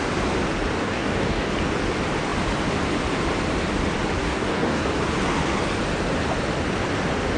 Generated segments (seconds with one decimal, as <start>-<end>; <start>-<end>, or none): 0.8-1.5; 4.2-4.8